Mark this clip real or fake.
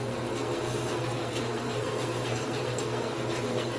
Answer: fake